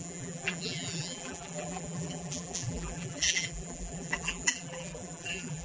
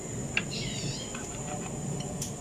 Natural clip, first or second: second